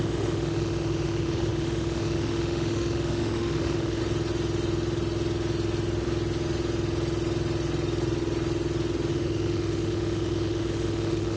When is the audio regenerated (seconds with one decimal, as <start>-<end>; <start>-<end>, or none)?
0.0-4.0; 9.1-11.4